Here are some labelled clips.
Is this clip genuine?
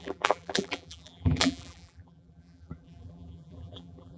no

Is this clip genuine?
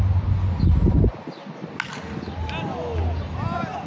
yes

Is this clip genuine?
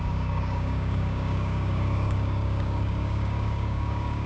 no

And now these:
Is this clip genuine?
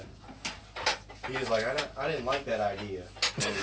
yes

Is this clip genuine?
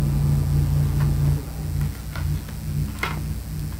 yes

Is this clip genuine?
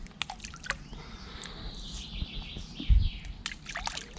yes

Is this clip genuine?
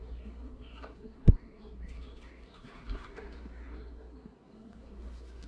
no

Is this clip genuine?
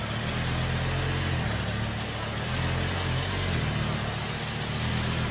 yes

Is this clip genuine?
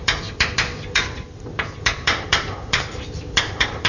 no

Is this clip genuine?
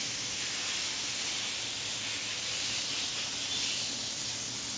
yes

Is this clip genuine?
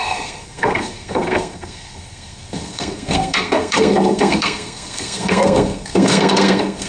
no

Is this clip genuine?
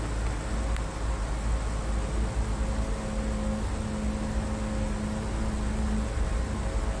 yes